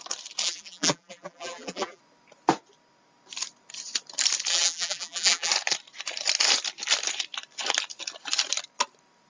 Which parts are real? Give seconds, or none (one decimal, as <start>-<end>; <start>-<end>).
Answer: 0.0-0.4; 2.0-4.5; 5.5-9.3